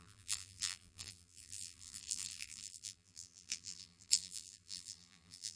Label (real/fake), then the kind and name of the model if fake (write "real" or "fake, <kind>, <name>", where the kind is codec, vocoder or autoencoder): fake, vocoder, BigVGAN v2